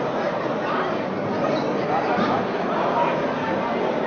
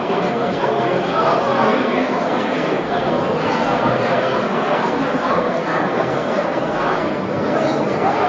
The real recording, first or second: first